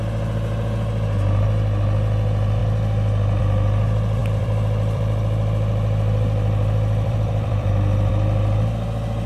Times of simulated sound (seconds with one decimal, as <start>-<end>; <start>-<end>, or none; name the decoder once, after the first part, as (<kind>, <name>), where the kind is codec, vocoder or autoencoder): 2.6-3.4 (vocoder, BigVGAN v2); 4.2-8.1